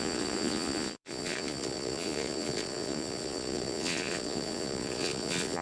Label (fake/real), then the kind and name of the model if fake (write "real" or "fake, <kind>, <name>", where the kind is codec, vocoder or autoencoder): fake, vocoder, Vocos